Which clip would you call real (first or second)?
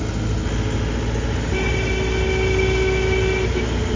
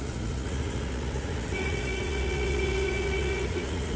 first